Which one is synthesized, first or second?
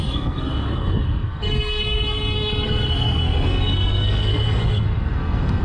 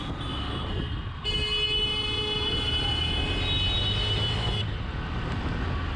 first